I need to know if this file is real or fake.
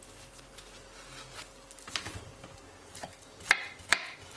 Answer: real